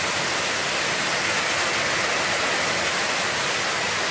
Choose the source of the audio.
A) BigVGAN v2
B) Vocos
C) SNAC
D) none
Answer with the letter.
D